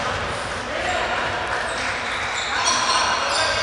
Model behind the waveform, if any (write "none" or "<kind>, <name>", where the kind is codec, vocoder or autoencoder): none